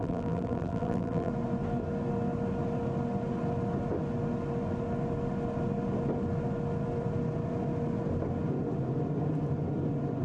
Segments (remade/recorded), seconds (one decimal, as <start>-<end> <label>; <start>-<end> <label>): 0.0-1.3 remade; 1.3-10.2 recorded